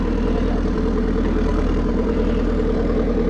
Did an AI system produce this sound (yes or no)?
yes